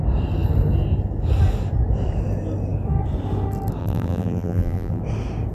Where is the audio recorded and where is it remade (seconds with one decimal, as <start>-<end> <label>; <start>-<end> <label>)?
0.0-3.8 recorded; 3.8-5.0 remade; 5.0-5.5 recorded